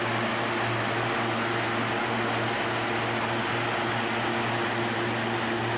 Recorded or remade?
recorded